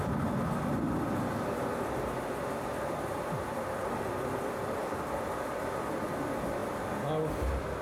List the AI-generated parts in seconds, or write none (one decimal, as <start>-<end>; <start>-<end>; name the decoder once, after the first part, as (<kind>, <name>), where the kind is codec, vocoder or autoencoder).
none